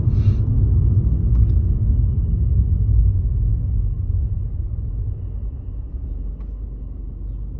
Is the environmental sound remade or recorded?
recorded